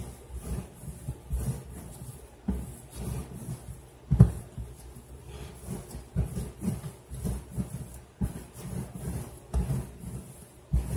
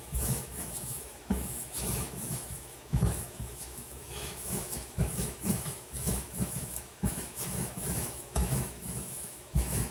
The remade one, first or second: second